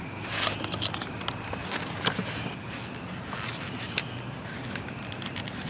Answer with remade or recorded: recorded